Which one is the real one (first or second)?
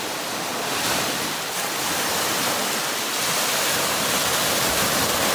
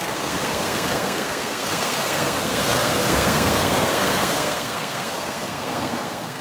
first